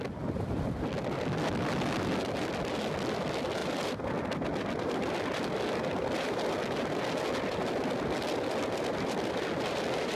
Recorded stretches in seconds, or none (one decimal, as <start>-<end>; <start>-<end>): 0.0-10.2